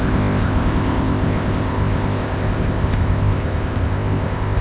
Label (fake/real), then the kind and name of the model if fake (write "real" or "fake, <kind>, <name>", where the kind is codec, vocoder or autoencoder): fake, codec, ZipCodec